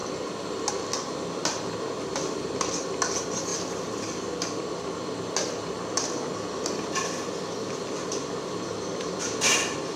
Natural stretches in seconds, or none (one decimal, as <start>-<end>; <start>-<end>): 0.0-10.0